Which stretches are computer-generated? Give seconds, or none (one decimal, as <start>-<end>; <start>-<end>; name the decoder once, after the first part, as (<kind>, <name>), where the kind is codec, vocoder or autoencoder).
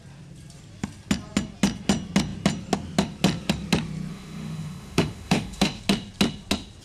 4.1-5.8 (autoencoder, DAC-VAE)